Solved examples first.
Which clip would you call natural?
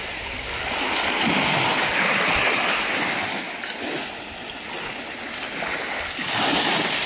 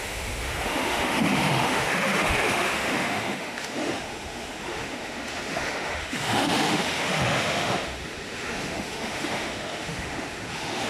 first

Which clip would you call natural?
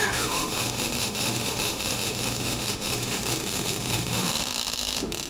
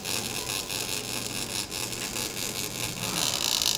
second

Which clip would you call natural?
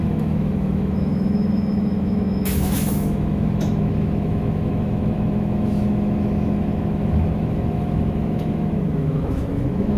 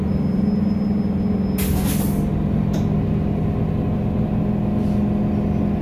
second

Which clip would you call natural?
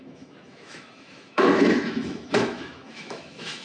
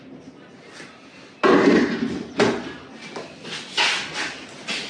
second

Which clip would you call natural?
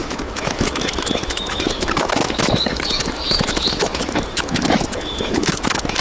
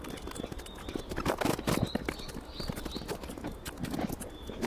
second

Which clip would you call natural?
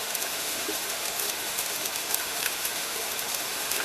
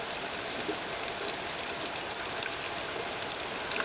second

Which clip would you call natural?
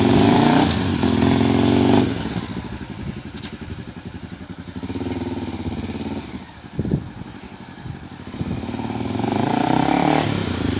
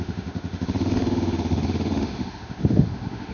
first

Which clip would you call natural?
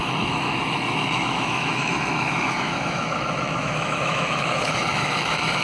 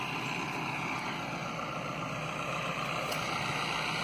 second